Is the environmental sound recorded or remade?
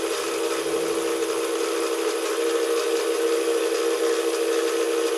recorded